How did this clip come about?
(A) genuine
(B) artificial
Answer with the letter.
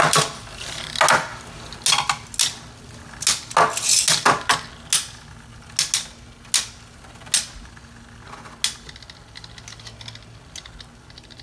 A